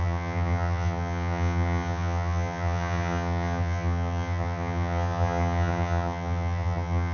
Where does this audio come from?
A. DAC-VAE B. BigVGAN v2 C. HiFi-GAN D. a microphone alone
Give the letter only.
C